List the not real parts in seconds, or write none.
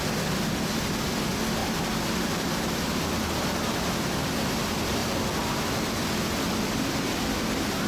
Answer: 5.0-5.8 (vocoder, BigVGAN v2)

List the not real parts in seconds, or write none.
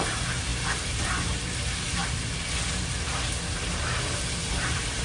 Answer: 0.0-2.0 (vocoder, BigVGAN v2); 4.6-5.0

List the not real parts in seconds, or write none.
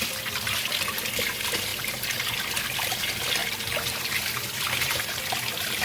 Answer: 3.4-5.2 (vocoder, BigVGAN v2)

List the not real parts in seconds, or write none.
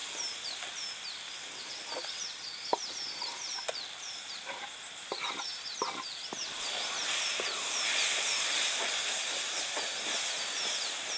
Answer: 1.7-11.2 (vocoder, BigVGAN v2)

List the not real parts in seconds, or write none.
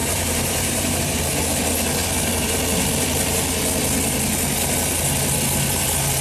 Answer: 0.0-1.0 (vocoder, BigVGAN v2)